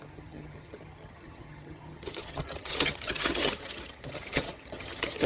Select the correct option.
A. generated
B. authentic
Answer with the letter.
A